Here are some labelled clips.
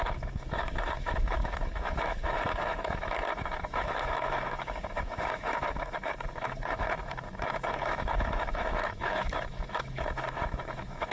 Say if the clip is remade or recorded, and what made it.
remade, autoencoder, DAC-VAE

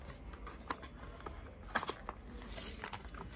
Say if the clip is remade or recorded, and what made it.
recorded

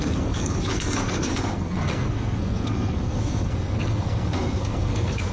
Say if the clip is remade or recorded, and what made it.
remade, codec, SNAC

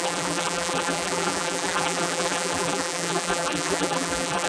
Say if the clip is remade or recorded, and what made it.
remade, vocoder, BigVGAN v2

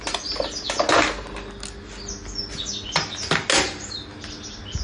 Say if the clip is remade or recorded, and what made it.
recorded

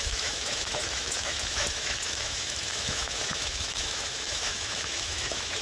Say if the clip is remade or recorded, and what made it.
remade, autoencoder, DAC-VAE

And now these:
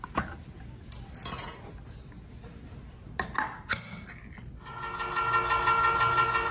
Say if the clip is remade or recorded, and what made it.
recorded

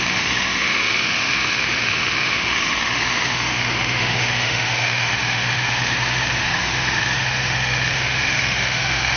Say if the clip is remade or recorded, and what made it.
remade, autoencoder, DAC-VAE